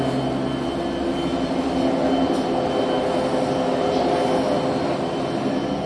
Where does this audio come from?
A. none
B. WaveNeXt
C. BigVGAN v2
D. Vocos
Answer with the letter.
A